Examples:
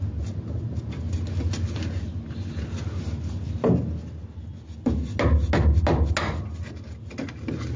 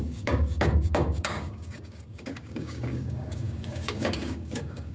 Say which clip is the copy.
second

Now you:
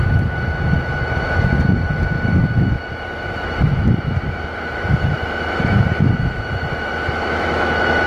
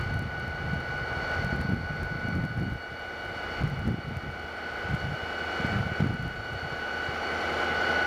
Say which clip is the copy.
first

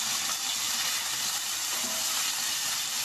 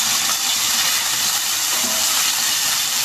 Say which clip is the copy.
second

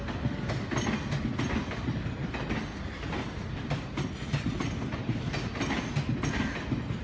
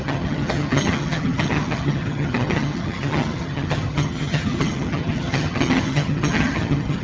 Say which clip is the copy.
second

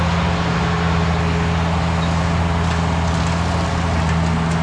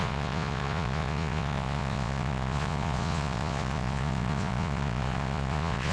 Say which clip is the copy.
second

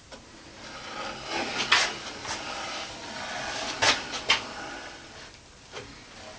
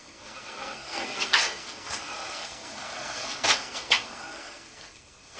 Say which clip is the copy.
second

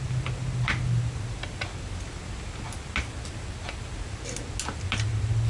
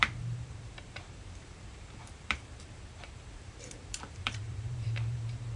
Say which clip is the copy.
second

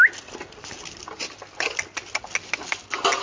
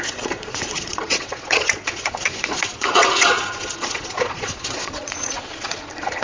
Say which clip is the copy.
second